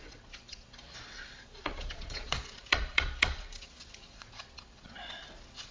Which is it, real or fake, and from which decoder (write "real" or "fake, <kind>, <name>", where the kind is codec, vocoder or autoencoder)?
fake, vocoder, Vocos